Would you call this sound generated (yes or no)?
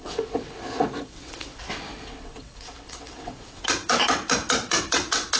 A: yes